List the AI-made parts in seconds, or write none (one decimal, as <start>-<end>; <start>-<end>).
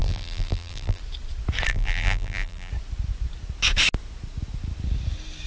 0.0-1.0; 1.7-2.7